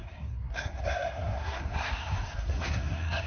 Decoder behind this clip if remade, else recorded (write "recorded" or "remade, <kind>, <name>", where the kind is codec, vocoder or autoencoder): remade, codec, SNAC